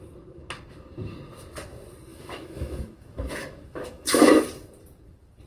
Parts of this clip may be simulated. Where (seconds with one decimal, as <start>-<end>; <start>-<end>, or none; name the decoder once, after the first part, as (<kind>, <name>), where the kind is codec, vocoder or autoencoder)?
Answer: 2.1-4.3 (autoencoder, DAC-VAE)